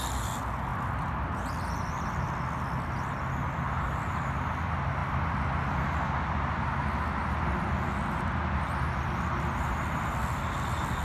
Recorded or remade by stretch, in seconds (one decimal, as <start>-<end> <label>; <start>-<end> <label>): 0.0-11.0 recorded